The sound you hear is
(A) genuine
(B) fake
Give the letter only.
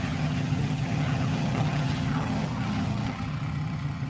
B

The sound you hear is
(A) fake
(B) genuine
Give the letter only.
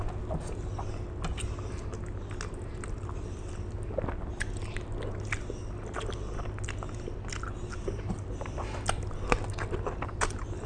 B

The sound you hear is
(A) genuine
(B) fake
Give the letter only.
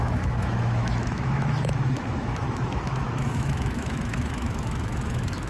B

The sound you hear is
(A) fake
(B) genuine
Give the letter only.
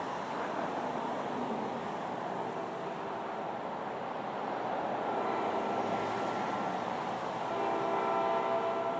B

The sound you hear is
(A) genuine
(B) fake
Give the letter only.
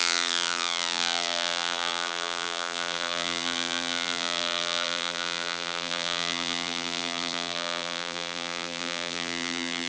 B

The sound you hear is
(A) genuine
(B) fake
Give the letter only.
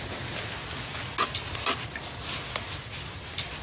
A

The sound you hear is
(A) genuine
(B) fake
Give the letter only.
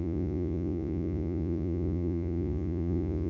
B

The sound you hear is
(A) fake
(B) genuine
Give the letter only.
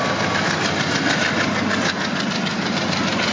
B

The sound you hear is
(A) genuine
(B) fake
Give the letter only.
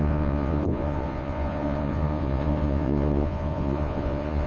B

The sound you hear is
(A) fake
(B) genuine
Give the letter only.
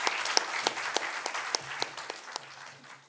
B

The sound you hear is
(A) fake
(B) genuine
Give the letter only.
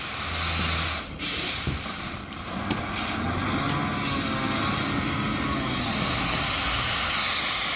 B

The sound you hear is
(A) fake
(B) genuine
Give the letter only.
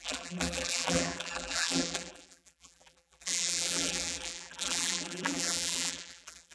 A